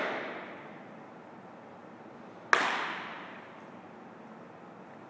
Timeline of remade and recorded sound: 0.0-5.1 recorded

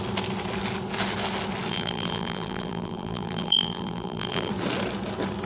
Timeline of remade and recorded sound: 0.0-1.7 recorded; 1.7-4.5 remade; 4.5-5.5 recorded

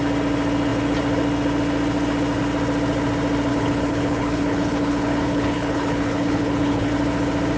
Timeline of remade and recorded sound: 0.0-3.5 recorded; 3.5-6.9 remade; 6.9-7.6 recorded

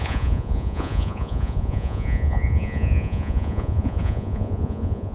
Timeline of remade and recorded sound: 0.0-5.1 remade

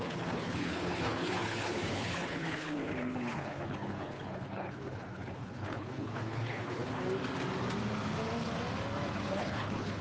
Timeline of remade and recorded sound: 0.0-7.0 remade; 7.0-9.3 recorded; 9.3-10.0 remade

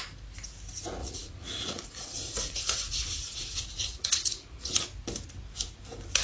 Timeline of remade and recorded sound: 0.0-1.0 recorded; 1.0-4.7 remade; 4.7-6.2 recorded